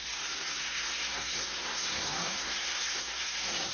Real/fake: fake